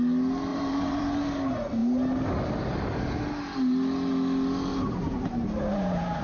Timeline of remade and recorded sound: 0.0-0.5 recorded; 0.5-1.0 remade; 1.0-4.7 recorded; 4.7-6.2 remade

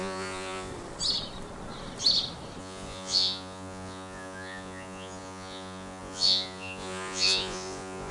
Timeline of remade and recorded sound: 0.0-0.7 remade; 0.7-2.6 recorded; 2.6-8.1 remade